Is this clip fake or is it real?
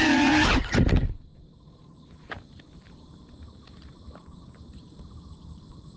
real